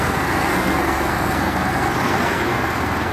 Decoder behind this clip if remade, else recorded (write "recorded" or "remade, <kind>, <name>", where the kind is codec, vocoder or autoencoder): remade, codec, SNAC